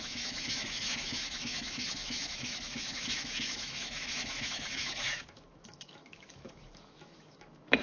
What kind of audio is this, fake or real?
fake